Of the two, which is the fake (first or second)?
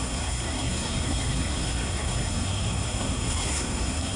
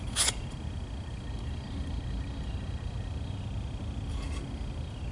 first